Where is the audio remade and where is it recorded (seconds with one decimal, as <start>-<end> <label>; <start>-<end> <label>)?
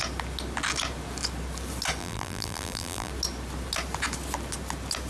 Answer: 0.0-2.0 recorded; 2.0-3.1 remade; 3.1-5.1 recorded